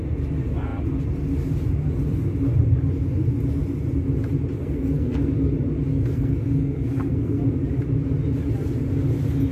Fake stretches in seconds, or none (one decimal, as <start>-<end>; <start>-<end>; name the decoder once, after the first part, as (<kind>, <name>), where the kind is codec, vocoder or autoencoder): 4.6-5.3 (codec, SNAC); 5.9-7.4